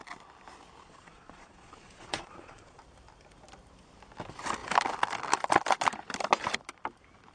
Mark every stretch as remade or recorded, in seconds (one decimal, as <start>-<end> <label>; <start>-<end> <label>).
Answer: 0.0-0.8 recorded; 0.8-2.8 remade; 2.8-7.3 recorded